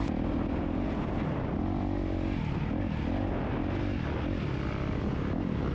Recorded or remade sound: recorded